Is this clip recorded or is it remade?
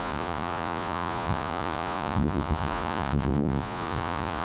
remade